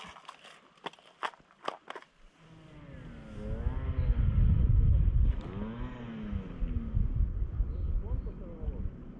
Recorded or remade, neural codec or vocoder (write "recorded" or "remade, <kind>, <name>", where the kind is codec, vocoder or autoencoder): recorded